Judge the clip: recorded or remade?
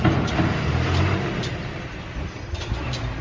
recorded